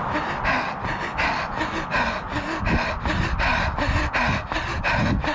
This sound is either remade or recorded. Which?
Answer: recorded